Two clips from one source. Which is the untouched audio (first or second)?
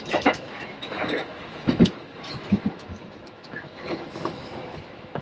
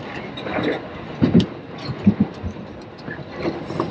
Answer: second